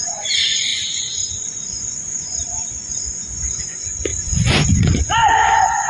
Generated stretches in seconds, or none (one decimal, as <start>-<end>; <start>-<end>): 0.0-5.9